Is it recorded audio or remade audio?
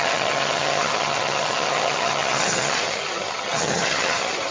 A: remade